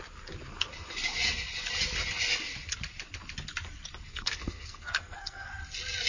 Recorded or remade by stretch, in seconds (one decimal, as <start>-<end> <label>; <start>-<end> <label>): 0.0-4.1 recorded; 4.1-5.5 remade; 5.5-6.1 recorded